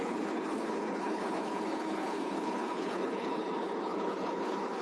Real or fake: fake